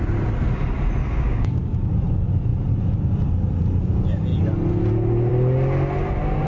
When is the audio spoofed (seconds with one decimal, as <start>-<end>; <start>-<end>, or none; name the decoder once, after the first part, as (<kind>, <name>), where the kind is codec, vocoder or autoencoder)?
1.0-1.9 (codec, DAC)